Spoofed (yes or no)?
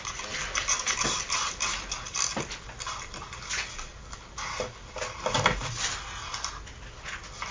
no